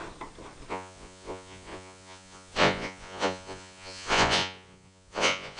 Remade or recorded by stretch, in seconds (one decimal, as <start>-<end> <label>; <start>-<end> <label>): 0.0-0.7 recorded; 0.7-5.6 remade